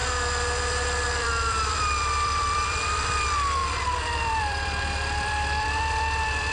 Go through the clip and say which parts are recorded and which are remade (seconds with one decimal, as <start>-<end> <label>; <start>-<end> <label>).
0.0-1.2 recorded; 1.2-6.5 remade